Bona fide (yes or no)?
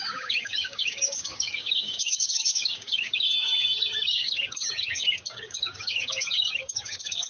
no